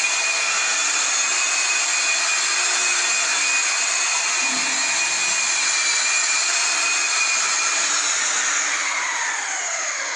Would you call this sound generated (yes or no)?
no